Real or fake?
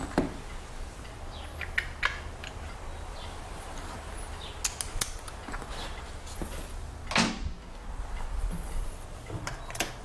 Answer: real